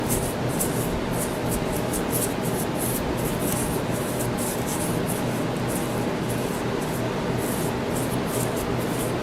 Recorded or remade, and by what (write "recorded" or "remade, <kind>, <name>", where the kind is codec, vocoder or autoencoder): recorded